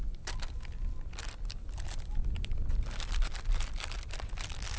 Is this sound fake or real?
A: fake